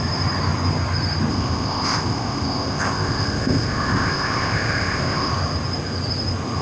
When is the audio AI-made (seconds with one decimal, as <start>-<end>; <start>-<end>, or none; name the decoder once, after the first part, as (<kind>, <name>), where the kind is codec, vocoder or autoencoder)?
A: 1.3-5.3 (codec, ZipCodec)

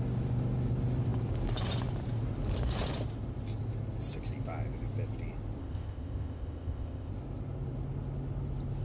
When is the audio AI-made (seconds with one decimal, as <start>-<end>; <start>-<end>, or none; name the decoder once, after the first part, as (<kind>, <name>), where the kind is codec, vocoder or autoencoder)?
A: 5.6-7.1 (codec, ZipCodec)

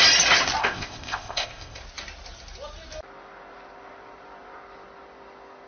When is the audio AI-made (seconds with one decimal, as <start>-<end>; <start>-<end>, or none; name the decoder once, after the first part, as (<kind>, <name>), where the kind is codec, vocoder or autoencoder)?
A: 0.6-1.8 (codec, ZipCodec)

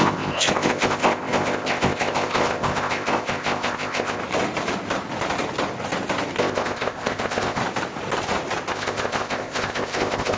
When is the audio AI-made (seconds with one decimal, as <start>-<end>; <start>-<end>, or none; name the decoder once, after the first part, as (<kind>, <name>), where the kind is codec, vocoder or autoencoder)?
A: 0.0-4.2 (codec, ZipCodec); 6.4-7.6; 8.7-10.4

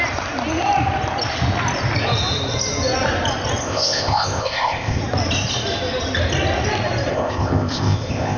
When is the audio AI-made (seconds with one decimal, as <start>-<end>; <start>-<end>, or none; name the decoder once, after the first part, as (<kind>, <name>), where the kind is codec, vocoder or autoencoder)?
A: 3.6-5.0 (codec, ZipCodec); 7.1-8.4